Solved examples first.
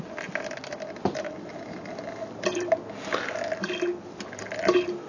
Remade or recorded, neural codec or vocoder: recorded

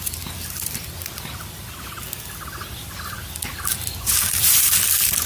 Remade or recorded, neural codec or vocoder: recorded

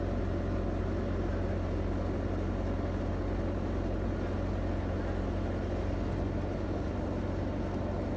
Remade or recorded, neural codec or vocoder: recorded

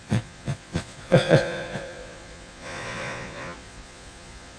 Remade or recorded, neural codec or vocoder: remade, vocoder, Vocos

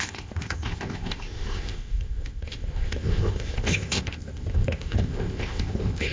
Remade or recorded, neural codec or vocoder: remade, codec, ZipCodec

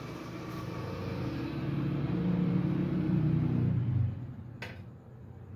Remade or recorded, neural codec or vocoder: recorded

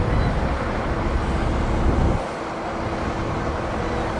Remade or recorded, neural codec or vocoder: recorded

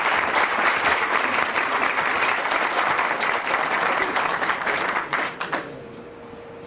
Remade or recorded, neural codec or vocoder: remade, vocoder, BigVGAN v2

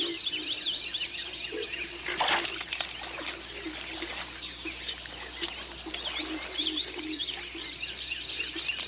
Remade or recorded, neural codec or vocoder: recorded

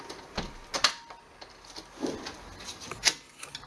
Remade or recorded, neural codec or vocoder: recorded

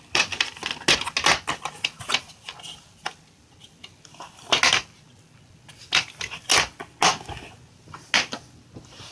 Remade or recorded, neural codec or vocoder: recorded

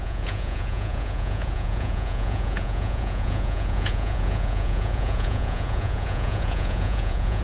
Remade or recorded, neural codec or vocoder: remade, vocoder, Vocos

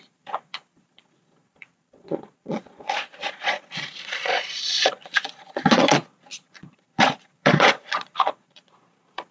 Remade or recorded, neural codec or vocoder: remade, vocoder, Vocos